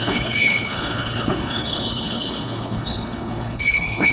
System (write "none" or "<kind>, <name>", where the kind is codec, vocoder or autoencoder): codec, HILCodec